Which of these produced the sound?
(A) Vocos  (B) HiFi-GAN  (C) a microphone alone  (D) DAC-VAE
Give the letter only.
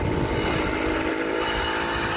C